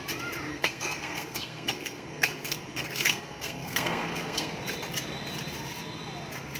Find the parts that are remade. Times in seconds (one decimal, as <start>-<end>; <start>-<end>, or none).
0.5-4.5